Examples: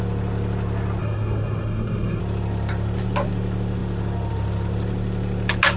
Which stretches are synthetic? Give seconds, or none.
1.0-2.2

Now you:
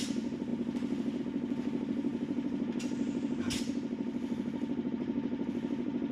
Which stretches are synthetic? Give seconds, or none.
none

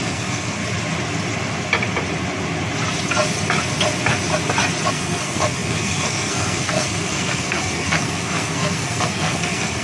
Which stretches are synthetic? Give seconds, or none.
0.0-0.6; 4.9-9.8

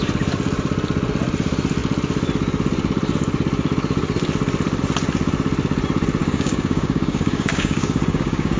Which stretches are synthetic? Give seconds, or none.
6.2-8.6

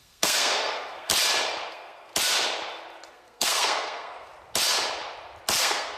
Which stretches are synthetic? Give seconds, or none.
0.0-1.1; 1.7-2.1; 3.1-4.3; 5.6-6.0

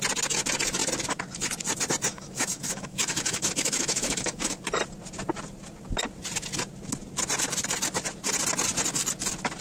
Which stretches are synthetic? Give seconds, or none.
2.1-4.6

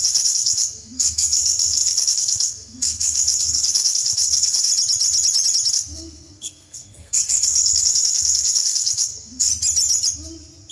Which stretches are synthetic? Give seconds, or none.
0.0-4.7; 5.7-9.5

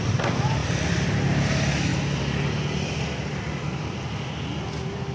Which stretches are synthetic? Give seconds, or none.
none